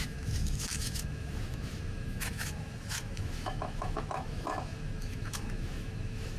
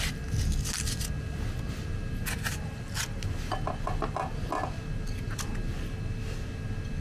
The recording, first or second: second